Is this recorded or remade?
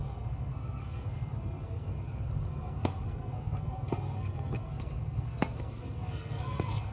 remade